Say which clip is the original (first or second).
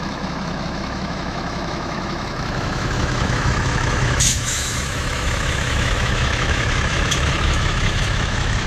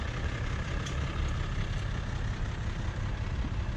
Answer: second